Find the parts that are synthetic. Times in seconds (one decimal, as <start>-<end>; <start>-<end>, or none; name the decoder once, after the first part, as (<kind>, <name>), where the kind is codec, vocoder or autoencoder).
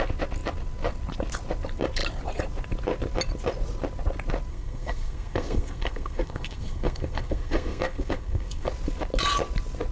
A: 4.5-8.7 (codec, SNAC)